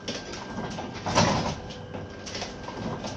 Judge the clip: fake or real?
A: real